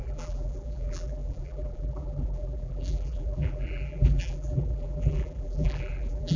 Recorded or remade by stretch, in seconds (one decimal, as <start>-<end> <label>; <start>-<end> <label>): 0.0-6.4 remade

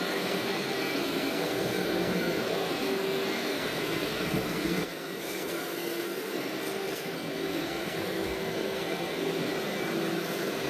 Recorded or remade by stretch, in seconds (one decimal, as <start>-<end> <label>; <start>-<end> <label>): 0.0-9.5 remade; 9.5-10.2 recorded; 10.2-10.7 remade

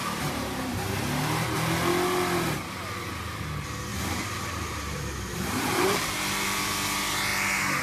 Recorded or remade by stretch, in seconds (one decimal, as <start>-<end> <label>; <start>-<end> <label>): 0.0-0.9 remade; 0.9-3.9 recorded; 3.9-6.7 remade; 6.7-7.8 recorded

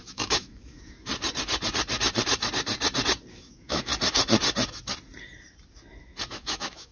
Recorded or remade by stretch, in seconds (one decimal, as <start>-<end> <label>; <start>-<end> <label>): 0.0-1.1 remade; 1.1-3.3 recorded; 3.3-3.9 remade; 3.9-6.3 recorded; 6.3-6.9 remade

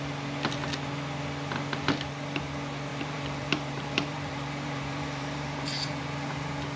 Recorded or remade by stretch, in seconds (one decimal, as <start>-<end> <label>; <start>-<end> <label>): 0.0-2.9 recorded; 2.9-6.0 remade; 6.0-6.8 recorded